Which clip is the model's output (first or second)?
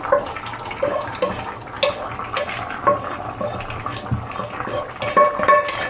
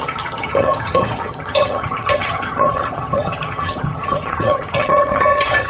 second